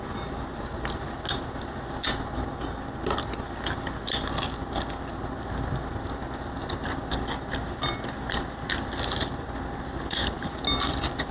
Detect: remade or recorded recorded